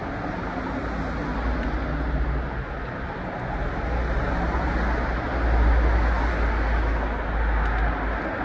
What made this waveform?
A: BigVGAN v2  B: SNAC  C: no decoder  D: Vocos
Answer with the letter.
C